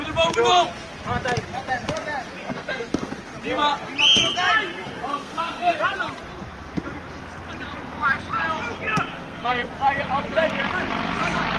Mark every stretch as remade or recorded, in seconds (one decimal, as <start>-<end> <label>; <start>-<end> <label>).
0.0-2.4 recorded; 2.4-3.1 remade; 3.1-5.1 recorded; 5.1-5.8 remade; 5.8-9.1 recorded; 9.1-9.7 remade; 9.7-11.6 recorded